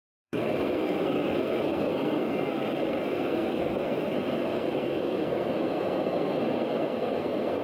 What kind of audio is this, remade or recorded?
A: remade